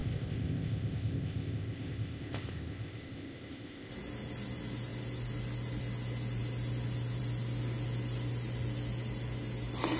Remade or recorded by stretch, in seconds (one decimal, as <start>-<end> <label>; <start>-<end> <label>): 0.0-3.9 remade; 3.9-10.0 recorded